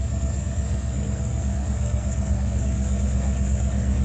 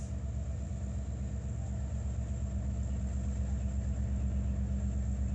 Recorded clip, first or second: second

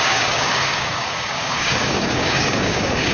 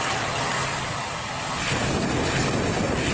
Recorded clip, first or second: second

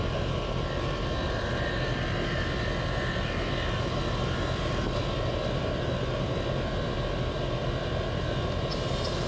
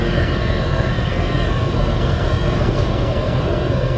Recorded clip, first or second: first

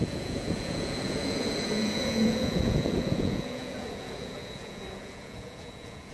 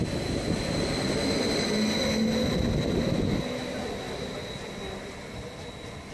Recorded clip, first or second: second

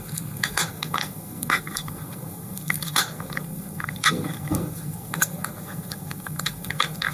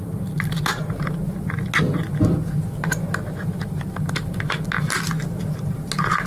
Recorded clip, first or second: second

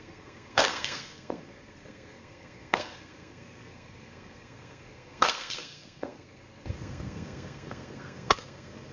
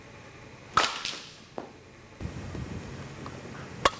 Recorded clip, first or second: second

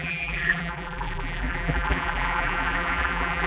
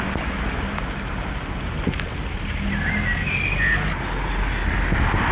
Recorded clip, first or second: second